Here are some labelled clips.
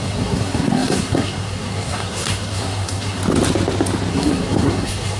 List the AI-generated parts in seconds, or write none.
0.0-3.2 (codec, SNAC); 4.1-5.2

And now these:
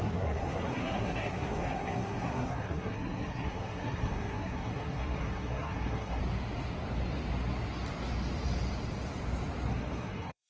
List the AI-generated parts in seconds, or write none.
0.0-6.2 (codec, SNAC); 9.7-10.5

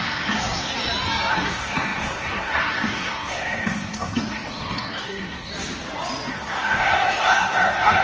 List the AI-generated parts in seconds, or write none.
0.0-0.7 (codec, SNAC); 1.3-5.5; 6.3-8.0

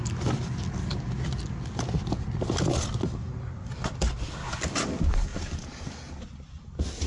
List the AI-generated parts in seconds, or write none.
none